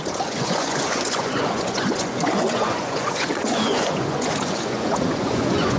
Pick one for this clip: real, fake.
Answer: fake